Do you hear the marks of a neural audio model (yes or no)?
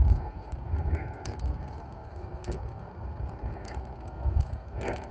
yes